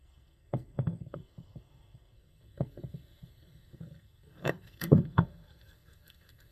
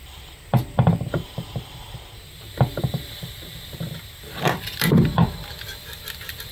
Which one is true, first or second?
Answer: second